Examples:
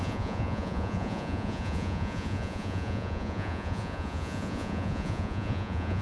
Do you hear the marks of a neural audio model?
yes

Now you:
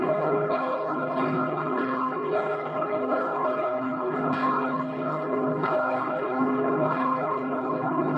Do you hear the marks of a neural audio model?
yes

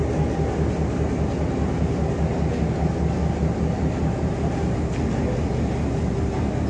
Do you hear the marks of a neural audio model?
no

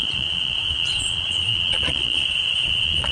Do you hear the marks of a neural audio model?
yes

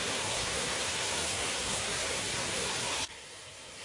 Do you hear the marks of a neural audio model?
yes